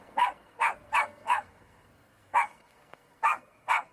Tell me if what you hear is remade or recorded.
remade